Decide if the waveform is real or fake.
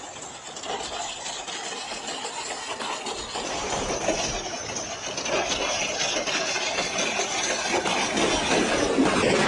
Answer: real